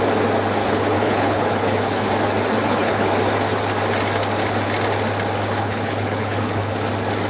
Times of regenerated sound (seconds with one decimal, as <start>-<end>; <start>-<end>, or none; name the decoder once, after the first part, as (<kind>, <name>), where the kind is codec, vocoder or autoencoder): 0.6-2.1 (codec, HILCodec); 2.6-3.1; 5.6-6.7